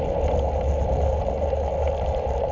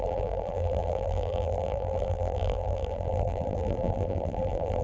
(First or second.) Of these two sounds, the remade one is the second